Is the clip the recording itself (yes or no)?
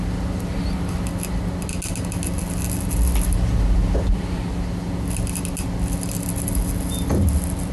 yes